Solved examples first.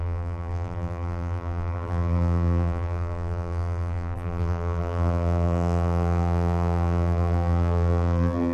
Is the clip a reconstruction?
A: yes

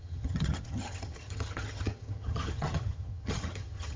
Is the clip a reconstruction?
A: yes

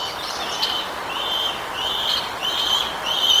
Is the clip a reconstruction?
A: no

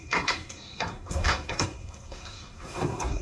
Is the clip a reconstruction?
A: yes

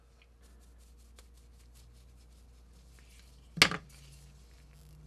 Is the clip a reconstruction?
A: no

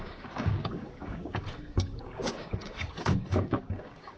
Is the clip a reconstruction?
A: yes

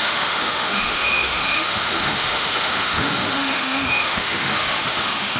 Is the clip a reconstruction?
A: yes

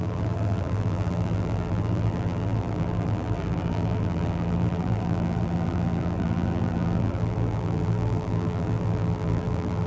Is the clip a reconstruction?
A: yes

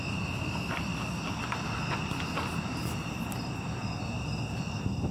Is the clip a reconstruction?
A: no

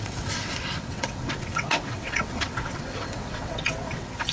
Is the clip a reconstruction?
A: yes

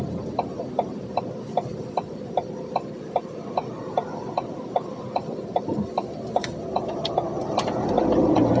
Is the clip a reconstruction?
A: yes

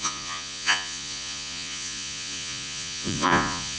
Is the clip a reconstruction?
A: yes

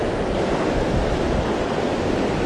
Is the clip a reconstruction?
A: no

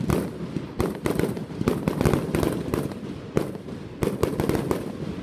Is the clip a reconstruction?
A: no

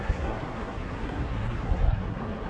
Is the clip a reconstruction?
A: yes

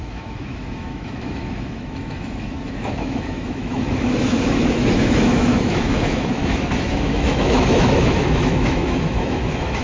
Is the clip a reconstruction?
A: yes